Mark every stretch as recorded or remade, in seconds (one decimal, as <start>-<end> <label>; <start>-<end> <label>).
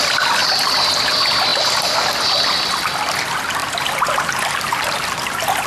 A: 0.0-3.6 recorded; 3.6-4.2 remade; 4.2-5.7 recorded